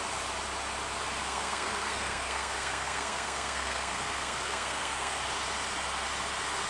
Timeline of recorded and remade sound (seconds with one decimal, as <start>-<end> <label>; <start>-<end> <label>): 0.0-1.2 recorded; 1.2-5.2 remade; 5.2-6.7 recorded